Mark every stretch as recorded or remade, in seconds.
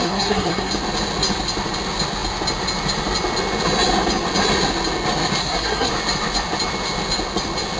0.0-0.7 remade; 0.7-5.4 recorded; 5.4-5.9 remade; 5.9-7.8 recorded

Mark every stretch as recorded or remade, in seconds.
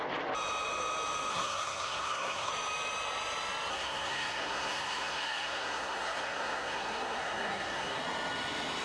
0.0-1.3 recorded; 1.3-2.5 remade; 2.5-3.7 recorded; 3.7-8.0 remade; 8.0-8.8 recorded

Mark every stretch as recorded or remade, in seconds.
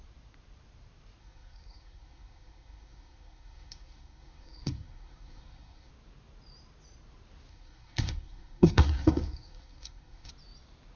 0.0-1.2 recorded; 1.2-5.9 remade; 5.9-7.5 recorded; 7.5-10.3 remade; 10.3-11.0 recorded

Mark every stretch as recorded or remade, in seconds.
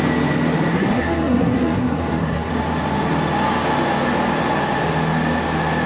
0.0-0.7 recorded; 0.7-2.5 remade; 2.5-5.9 recorded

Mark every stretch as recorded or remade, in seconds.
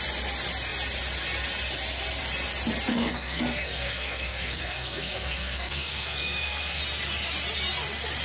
0.0-2.9 recorded; 2.9-6.8 remade; 6.8-8.2 recorded